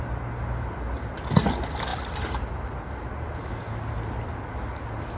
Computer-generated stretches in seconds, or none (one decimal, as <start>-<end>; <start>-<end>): none